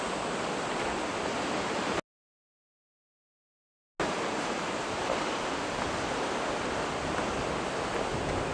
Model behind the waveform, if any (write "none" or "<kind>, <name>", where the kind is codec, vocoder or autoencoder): none